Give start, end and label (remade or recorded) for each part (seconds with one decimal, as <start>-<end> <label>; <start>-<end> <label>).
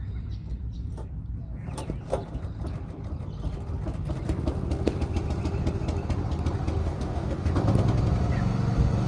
0.0-6.8 recorded; 6.8-7.5 remade; 7.5-9.1 recorded